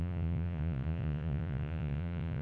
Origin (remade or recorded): remade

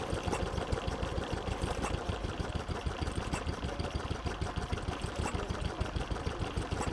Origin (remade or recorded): recorded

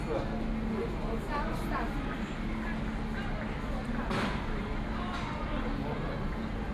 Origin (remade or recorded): recorded